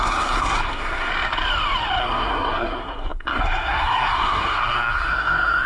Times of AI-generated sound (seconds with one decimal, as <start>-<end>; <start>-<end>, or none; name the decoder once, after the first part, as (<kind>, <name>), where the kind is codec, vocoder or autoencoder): 0.0-1.1 (codec, SNAC); 2.0-5.7